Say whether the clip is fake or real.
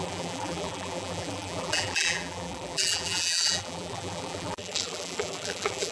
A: fake